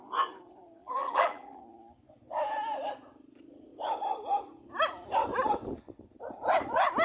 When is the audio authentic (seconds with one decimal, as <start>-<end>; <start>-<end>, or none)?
0.0-0.8; 1.6-7.0